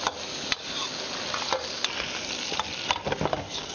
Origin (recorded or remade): recorded